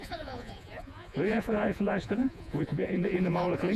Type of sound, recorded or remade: remade